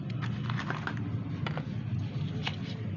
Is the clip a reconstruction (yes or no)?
no